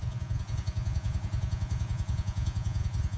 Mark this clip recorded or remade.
remade